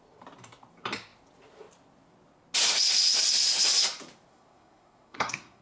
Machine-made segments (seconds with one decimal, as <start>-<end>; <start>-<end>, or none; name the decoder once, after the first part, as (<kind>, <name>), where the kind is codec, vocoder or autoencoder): 4.3-5.6 (codec, SNAC)